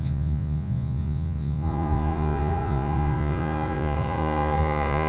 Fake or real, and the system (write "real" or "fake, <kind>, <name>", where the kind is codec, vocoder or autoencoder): fake, vocoder, Vocos